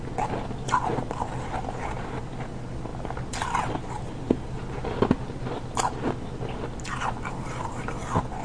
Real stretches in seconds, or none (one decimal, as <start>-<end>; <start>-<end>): 0.0-8.4